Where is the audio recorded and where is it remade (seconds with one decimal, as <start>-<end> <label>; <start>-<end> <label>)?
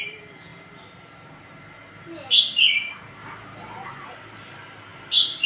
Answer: 0.0-5.5 recorded